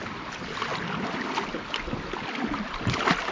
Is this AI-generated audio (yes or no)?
no